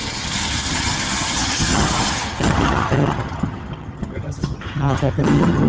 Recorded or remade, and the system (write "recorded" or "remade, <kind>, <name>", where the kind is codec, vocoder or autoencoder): remade, vocoder, HiFi-GAN